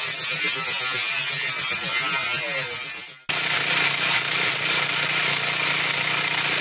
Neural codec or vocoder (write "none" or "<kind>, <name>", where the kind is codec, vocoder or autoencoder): none